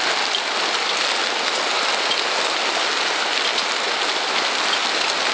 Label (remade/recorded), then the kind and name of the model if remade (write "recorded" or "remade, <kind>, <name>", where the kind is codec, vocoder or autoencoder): recorded